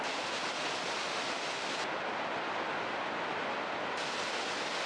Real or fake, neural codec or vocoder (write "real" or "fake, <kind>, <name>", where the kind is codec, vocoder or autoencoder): real